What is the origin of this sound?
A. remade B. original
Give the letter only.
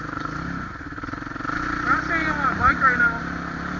B